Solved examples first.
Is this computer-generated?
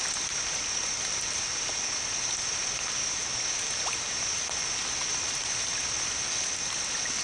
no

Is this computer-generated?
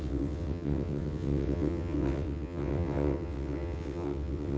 yes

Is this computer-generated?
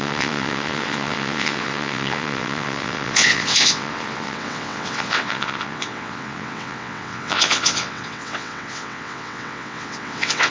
yes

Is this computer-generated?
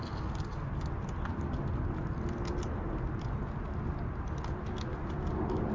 no